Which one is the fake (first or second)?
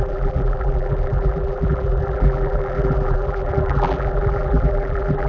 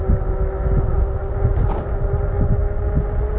first